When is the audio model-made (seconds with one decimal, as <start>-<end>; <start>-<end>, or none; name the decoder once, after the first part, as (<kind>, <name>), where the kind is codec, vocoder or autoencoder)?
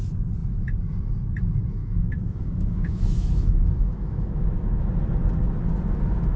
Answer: 1.8-4.9 (autoencoder, DAC-VAE)